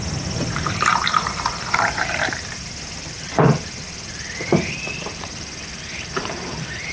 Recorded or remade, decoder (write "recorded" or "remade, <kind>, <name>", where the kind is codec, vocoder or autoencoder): remade, vocoder, BigVGAN v2